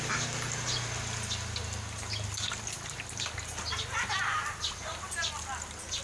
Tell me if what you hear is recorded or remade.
recorded